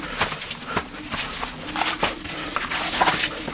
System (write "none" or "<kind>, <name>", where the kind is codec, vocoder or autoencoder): none